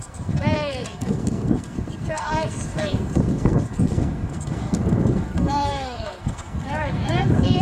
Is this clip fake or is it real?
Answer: fake